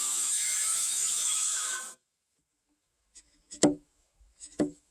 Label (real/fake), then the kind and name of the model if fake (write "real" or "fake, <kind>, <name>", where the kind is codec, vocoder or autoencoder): fake, autoencoder, DAC-VAE